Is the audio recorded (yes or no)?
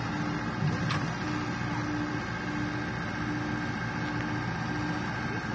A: yes